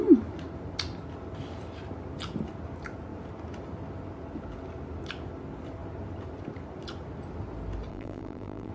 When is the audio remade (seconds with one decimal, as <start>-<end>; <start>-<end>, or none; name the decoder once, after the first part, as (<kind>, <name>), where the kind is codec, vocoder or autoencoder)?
7.9-8.7 (vocoder, BigVGAN v2)